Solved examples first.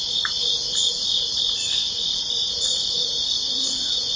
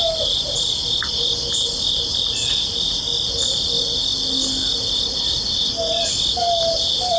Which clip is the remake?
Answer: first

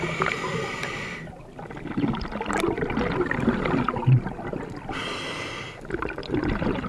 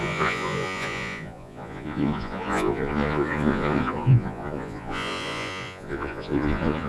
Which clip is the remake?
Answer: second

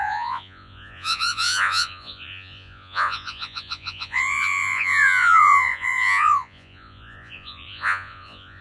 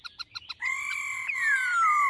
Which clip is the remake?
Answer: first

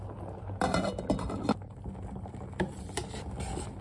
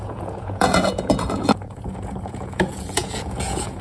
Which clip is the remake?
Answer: second